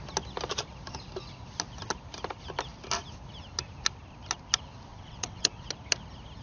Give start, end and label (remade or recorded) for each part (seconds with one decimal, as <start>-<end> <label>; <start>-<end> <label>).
0.0-4.9 recorded; 4.9-5.7 remade; 5.7-6.4 recorded